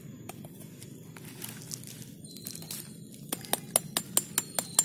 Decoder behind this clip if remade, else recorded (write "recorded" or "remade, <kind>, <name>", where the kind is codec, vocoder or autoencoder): recorded